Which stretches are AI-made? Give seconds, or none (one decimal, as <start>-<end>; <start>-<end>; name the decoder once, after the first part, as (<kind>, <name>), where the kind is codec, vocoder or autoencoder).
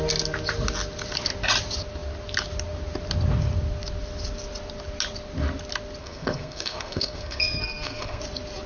6.0-8.2 (codec, SNAC)